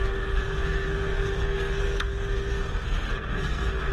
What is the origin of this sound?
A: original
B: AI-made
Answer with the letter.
B